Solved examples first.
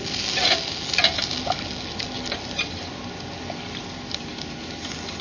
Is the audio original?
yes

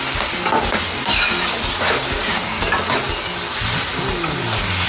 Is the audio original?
yes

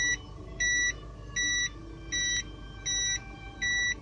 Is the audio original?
yes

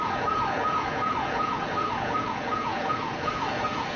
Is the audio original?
no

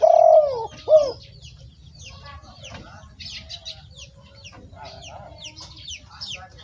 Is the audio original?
yes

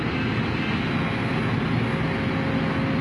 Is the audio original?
yes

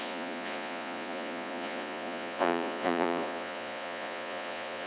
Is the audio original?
no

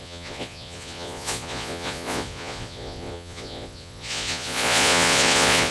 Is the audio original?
no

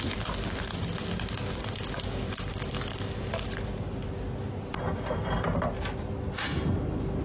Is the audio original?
yes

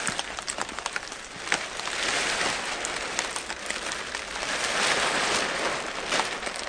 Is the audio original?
yes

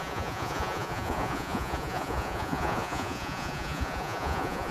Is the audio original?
no